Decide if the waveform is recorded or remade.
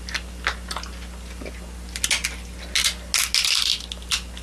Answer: recorded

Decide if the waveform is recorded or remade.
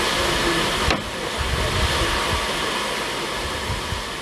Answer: recorded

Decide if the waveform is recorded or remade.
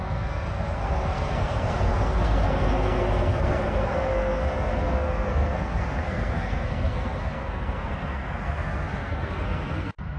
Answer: remade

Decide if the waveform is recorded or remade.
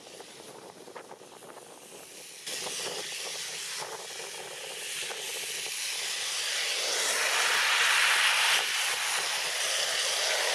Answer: recorded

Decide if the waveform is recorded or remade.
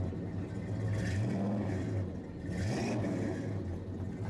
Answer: recorded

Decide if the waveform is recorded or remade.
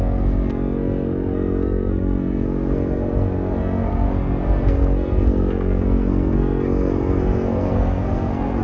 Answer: remade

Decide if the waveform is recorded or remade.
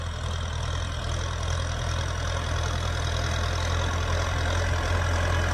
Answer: recorded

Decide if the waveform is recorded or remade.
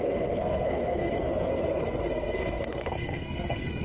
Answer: remade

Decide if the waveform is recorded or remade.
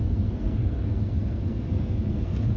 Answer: remade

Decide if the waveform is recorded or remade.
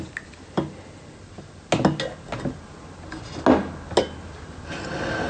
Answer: recorded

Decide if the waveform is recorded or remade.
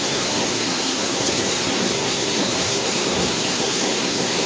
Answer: remade